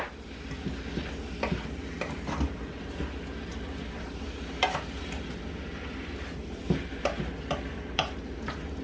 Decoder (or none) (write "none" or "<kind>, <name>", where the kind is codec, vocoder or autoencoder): vocoder, BigVGAN v2